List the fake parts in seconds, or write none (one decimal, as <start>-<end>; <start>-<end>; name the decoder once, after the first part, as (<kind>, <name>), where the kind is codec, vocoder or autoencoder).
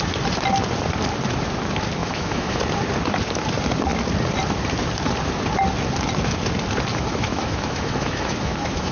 2.0-2.6 (autoencoder, DAC-VAE); 6.9-8.9